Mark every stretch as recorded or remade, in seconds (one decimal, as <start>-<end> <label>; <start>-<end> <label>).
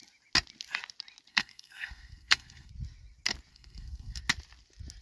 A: 0.0-1.3 recorded; 1.3-2.7 remade; 2.7-3.5 recorded; 3.5-4.2 remade; 4.2-5.0 recorded